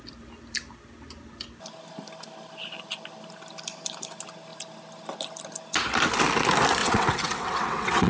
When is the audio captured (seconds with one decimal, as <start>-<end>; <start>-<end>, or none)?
0.0-6.8